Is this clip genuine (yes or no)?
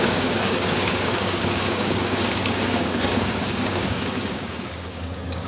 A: no